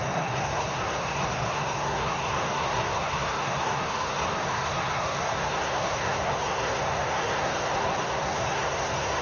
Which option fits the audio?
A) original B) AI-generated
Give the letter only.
B